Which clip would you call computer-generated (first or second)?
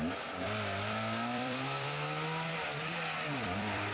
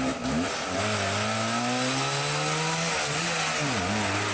first